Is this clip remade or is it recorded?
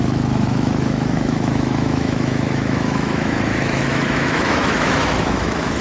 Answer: remade